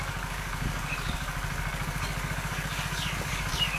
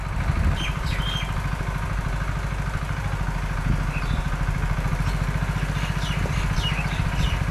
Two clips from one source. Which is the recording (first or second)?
second